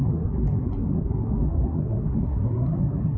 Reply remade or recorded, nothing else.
remade